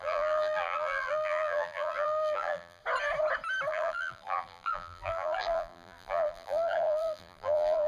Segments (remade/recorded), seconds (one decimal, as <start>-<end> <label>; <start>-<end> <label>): 0.0-2.8 remade; 2.8-3.7 recorded; 3.7-7.9 remade